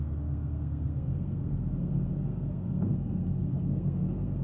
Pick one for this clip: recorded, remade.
remade